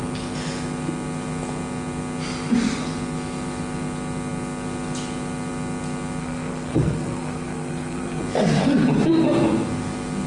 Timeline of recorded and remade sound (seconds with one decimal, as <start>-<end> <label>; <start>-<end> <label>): 0.0-6.2 recorded; 6.2-8.2 remade; 8.2-10.3 recorded